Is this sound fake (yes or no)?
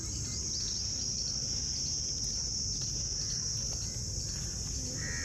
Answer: no